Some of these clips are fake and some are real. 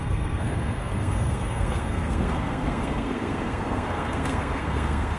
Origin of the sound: fake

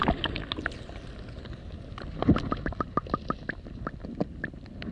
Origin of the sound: real